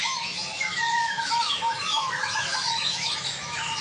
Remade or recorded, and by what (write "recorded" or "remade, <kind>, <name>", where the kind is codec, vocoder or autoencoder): remade, autoencoder, DAC-VAE